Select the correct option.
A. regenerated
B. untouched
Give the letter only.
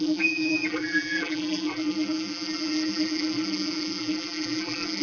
A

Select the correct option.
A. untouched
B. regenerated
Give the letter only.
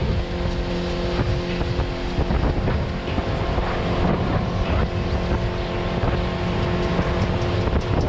A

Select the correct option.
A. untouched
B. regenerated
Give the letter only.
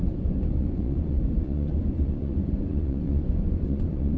B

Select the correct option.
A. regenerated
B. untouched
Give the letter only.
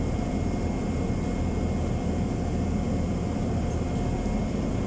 B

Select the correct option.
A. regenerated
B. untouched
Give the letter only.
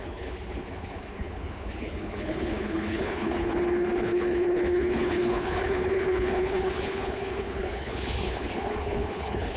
A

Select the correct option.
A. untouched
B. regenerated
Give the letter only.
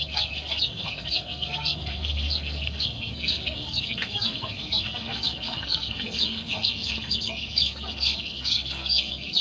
B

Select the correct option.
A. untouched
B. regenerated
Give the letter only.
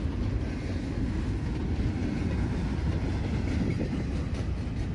A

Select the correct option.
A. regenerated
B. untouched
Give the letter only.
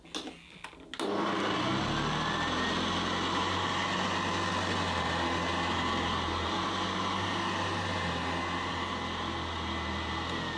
B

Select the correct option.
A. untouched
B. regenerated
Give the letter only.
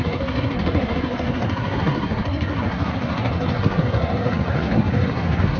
B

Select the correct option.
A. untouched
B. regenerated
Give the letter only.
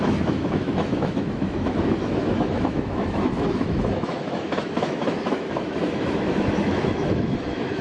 B